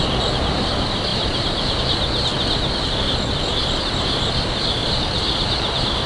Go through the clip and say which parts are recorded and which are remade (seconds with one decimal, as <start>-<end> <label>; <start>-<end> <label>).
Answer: 0.0-1.1 recorded; 1.1-1.8 remade; 1.8-4.8 recorded; 4.8-6.1 remade

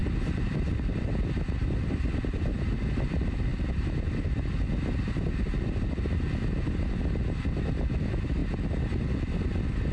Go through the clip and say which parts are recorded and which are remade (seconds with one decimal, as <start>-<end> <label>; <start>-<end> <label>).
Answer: 0.0-9.9 recorded

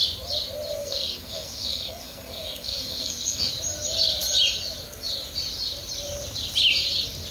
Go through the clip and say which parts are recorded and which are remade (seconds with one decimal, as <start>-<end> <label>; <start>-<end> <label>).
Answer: 0.0-0.8 recorded; 0.8-3.5 remade; 3.5-7.3 recorded